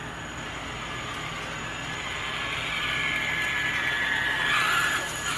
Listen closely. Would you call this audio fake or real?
real